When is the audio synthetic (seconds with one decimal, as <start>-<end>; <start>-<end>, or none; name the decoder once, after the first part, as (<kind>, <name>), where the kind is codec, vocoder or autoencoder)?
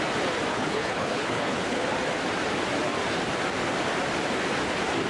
0.5-1.9 (codec, HILCodec)